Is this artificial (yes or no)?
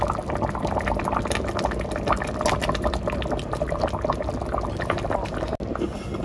no